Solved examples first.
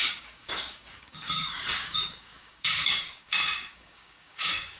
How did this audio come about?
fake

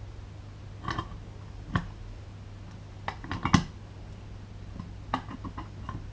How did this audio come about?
real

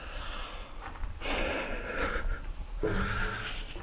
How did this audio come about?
real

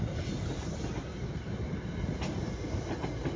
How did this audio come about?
real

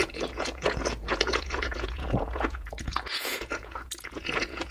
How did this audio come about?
fake